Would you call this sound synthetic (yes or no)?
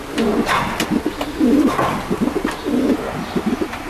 no